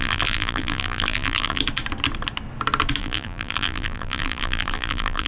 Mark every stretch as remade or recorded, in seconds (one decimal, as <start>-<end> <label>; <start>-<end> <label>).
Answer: 0.0-1.6 remade; 1.6-3.0 recorded; 3.0-5.3 remade